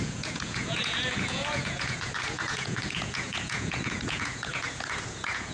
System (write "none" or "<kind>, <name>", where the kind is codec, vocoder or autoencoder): vocoder, Vocos